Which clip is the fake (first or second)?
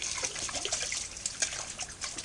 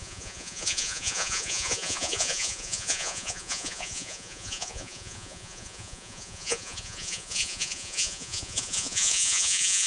second